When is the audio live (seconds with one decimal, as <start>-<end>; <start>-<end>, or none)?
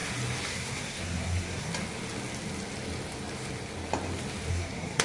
0.0-0.5; 1.7-4.5